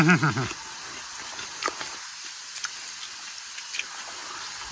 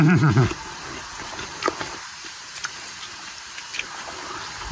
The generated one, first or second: second